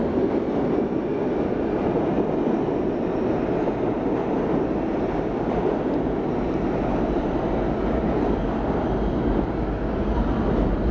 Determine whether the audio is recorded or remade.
recorded